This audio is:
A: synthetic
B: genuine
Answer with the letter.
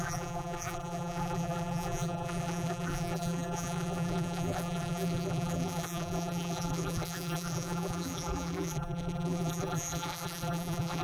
A